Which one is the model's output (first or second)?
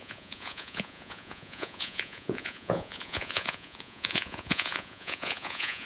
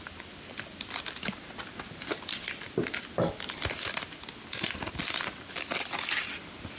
first